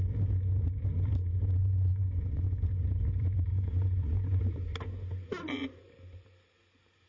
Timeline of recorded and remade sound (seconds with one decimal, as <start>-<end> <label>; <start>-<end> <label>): 0.0-1.6 recorded; 1.6-2.7 remade; 2.7-3.5 recorded; 3.5-4.4 remade; 4.4-7.1 recorded